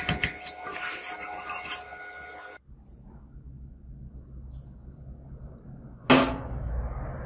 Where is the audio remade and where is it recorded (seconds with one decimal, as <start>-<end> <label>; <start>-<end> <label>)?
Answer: 0.0-7.3 recorded